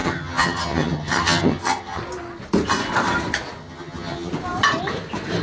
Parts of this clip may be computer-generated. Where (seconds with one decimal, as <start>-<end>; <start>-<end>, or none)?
0.0-2.0; 3.6-4.3